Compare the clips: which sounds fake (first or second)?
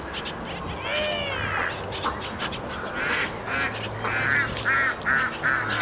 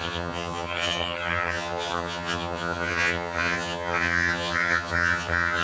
second